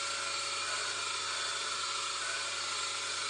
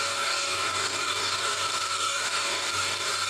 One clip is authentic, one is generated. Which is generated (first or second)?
second